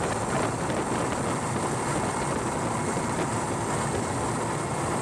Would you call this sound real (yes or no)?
yes